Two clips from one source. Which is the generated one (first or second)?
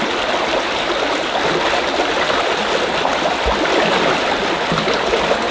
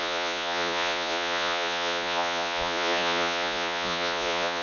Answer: second